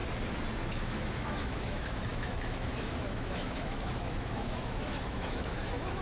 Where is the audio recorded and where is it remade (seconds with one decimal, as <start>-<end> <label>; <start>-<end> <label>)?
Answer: 0.0-0.7 recorded; 0.7-6.0 remade